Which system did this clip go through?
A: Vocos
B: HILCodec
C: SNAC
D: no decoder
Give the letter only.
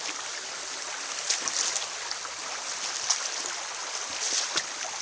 D